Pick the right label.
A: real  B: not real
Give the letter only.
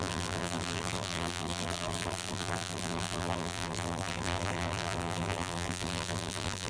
B